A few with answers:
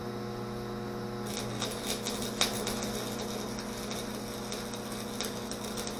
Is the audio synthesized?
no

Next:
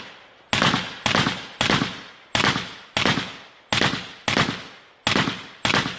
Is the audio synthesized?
no